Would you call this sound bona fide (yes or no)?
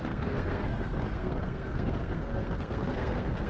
no